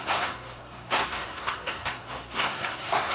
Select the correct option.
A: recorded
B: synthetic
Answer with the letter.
B